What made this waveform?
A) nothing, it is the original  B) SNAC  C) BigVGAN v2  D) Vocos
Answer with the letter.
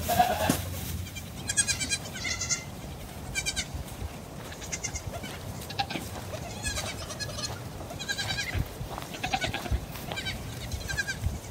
C